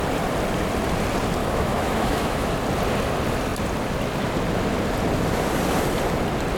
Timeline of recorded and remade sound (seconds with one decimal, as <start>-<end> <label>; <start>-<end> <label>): 0.0-1.4 recorded; 1.4-2.5 remade; 2.5-6.6 recorded